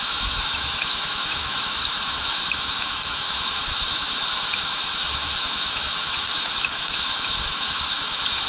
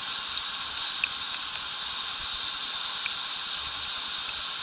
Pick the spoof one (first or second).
first